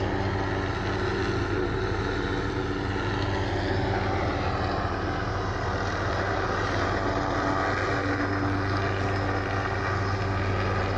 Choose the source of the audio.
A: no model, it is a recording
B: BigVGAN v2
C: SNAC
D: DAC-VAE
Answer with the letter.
A